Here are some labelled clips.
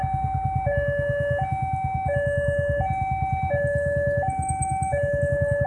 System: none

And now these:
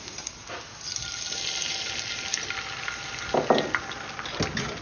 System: none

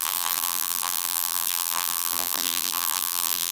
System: vocoder, BigVGAN v2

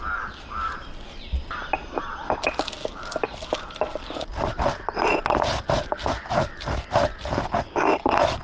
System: none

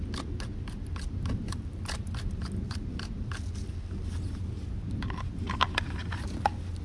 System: none